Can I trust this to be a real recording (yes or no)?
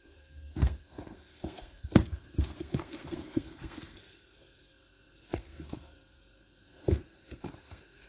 no